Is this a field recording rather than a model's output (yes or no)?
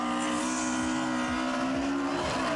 yes